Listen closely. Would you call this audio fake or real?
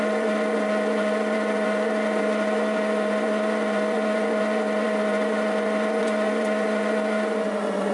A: fake